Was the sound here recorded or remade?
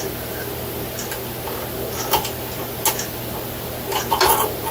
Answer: recorded